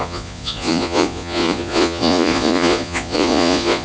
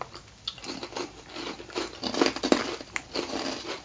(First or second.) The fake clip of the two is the first